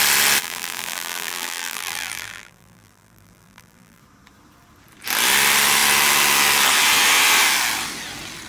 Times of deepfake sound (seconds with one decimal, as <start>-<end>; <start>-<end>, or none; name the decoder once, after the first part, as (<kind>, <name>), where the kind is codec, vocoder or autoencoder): 0.4-4.0 (vocoder, BigVGAN v2)